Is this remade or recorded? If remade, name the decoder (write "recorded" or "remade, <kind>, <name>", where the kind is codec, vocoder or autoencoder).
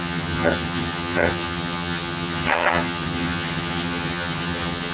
remade, vocoder, HiFi-GAN